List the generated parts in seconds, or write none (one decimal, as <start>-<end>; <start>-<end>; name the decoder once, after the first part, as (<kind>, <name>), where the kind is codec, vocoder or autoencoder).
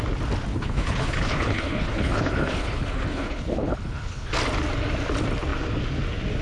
0.5-4.3 (codec, HILCodec)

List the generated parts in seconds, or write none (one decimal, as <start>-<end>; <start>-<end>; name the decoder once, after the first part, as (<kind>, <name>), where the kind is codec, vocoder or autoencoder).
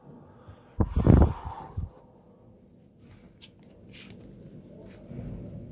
1.5-2.0 (codec, HILCodec)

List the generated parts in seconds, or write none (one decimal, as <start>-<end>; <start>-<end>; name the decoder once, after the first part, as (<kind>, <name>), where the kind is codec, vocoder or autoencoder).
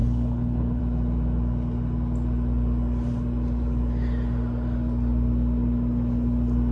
0.0-0.8 (codec, HILCodec)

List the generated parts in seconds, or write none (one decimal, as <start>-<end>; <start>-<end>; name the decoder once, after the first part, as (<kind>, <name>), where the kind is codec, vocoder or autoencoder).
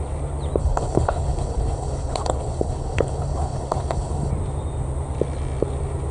0.6-4.3 (codec, HILCodec)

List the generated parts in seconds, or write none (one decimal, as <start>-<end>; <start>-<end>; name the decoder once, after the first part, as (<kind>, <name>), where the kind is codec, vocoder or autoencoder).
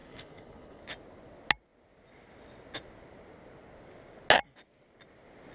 0.0-0.8 (codec, HILCodec)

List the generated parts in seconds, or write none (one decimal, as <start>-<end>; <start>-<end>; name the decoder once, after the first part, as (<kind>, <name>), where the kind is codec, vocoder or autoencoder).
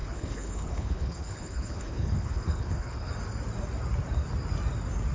0.0-3.1 (codec, HILCodec)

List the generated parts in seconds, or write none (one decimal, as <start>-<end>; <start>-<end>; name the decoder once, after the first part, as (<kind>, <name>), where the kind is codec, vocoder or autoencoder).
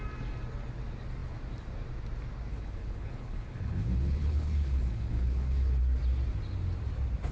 2.5-5.8 (codec, HILCodec)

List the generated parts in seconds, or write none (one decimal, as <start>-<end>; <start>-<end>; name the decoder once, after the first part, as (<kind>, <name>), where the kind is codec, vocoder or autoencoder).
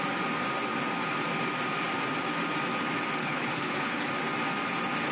3.2-4.1 (codec, HILCodec)